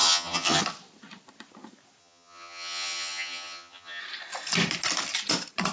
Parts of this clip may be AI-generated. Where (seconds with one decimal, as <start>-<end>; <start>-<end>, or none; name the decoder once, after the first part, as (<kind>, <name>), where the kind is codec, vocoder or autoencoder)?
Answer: 0.0-0.6 (vocoder, HiFi-GAN); 2.0-4.0